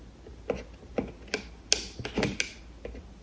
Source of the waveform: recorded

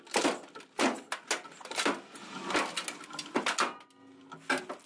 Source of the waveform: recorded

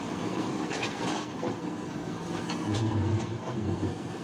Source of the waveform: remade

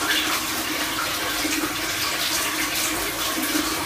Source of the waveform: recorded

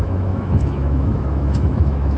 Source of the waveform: remade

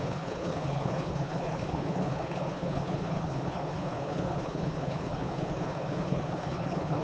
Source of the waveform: remade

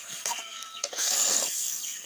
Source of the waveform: remade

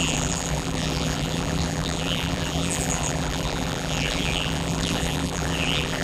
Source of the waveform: remade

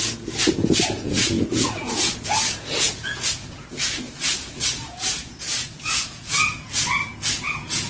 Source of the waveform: remade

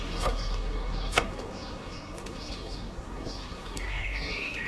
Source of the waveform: remade